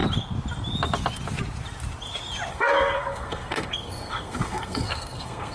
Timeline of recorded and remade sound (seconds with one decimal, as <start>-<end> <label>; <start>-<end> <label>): 0.0-2.5 recorded; 2.5-5.5 remade